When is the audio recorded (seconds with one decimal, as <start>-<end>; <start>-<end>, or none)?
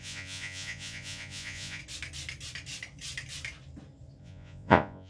1.8-4.2